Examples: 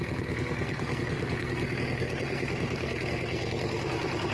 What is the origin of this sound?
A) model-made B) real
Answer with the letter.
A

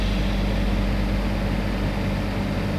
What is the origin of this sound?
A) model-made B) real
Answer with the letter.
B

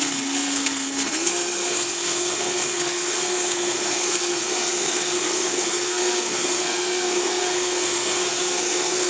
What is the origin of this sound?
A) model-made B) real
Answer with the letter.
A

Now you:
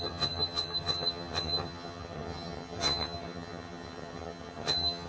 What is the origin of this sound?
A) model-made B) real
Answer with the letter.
A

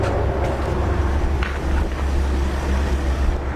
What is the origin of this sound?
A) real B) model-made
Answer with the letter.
A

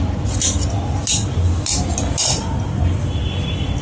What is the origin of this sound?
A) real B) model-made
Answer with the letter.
A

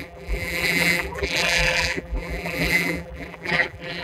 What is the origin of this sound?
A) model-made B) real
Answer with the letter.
A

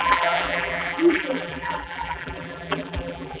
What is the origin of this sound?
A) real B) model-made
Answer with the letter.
B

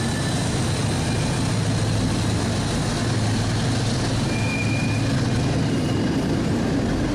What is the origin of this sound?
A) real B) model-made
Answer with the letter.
A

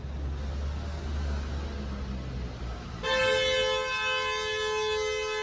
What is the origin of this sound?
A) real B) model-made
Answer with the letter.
A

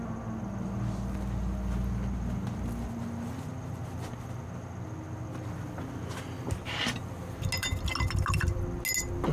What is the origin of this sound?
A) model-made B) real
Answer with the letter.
B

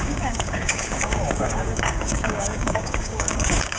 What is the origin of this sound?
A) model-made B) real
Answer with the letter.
A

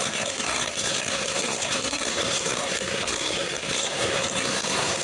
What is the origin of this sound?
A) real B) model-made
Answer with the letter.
B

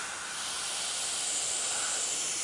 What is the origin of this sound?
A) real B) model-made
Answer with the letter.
A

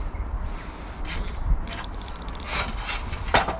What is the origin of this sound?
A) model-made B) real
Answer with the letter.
B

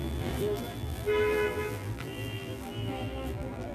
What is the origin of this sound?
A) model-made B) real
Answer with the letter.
A